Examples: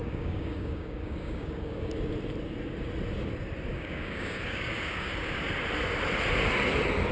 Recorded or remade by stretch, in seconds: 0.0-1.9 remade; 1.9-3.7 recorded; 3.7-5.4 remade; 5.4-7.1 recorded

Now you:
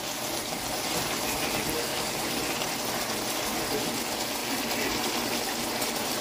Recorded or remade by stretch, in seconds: 0.0-1.9 recorded; 1.9-2.4 remade; 2.4-6.2 recorded